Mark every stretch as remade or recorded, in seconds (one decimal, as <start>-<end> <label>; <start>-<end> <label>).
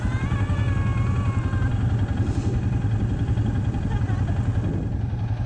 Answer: 0.0-5.5 recorded